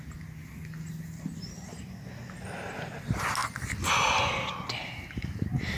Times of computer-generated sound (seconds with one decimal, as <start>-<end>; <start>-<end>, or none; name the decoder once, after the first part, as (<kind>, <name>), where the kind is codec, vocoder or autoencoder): none